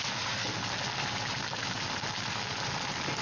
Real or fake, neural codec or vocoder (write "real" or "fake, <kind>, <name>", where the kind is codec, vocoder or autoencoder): real